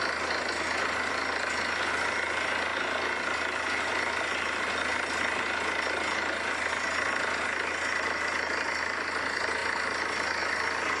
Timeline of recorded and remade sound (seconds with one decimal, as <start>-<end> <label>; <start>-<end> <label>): 0.0-11.0 recorded